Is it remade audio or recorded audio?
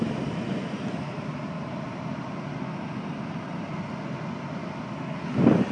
recorded